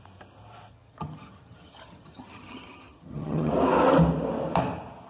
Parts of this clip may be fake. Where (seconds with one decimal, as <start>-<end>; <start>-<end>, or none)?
0.7-3.5